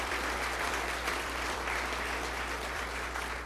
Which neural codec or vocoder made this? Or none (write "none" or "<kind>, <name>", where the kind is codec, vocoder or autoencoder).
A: vocoder, BigVGAN v2